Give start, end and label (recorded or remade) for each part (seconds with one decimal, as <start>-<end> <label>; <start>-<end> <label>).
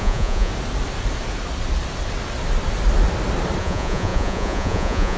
0.0-0.5 remade; 0.5-3.6 recorded; 3.6-5.2 remade